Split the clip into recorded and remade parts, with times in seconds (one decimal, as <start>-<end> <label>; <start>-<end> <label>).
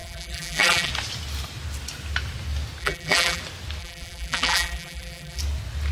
0.0-0.9 remade; 0.9-2.8 recorded; 2.8-3.4 remade; 3.4-3.8 recorded; 3.8-5.4 remade; 5.4-5.9 recorded